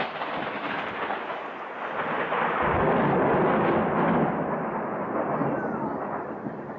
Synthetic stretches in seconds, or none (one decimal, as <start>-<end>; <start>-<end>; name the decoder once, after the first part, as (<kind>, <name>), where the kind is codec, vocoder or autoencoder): none